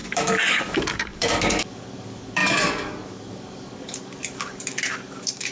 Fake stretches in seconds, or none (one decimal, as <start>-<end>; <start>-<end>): 0.0-5.5